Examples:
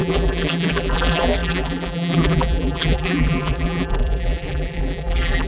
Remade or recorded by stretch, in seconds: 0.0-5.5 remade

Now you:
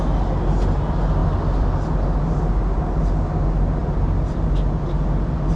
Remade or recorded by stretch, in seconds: 0.0-1.2 recorded; 1.2-1.7 remade; 1.7-5.6 recorded

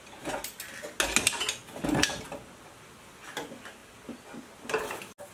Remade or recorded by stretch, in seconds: 0.0-5.3 recorded

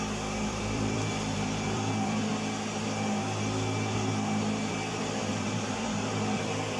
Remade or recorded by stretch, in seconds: 0.0-2.3 remade; 2.3-4.7 recorded; 4.7-6.8 remade

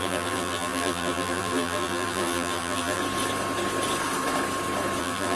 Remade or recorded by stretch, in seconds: 0.0-3.0 remade; 3.0-5.0 recorded; 5.0-5.4 remade

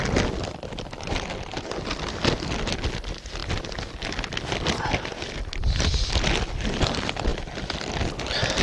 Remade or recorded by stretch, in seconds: 0.0-8.6 recorded